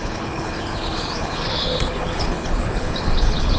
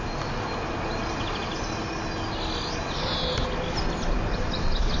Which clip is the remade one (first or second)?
first